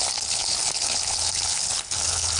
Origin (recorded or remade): remade